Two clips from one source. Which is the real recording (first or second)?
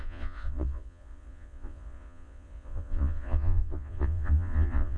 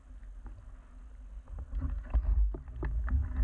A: second